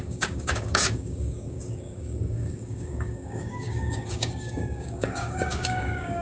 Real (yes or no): no